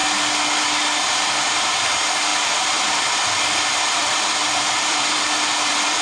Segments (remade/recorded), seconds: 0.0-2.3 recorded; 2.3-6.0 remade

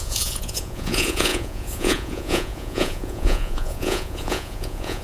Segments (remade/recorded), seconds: 0.0-5.0 remade

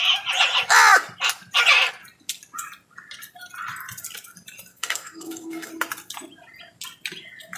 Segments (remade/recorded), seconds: 0.0-4.7 recorded; 4.7-5.7 remade; 5.7-7.6 recorded

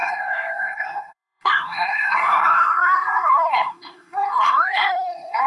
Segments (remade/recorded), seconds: 0.0-5.5 remade

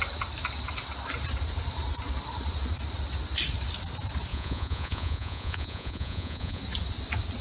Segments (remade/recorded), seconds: 0.0-4.3 recorded; 4.3-6.6 remade; 6.6-7.4 recorded